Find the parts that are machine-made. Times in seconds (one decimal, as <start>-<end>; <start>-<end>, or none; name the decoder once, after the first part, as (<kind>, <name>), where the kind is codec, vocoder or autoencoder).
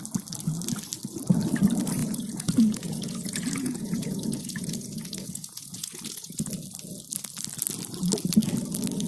2.0-6.5 (vocoder, Vocos)